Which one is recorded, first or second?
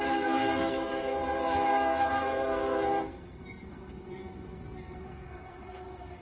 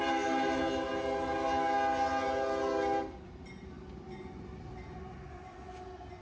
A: second